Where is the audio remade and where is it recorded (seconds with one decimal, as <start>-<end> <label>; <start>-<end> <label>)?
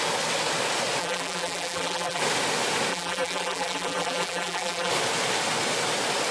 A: 0.0-1.0 recorded; 1.0-2.2 remade; 2.2-2.9 recorded; 2.9-4.9 remade; 4.9-6.3 recorded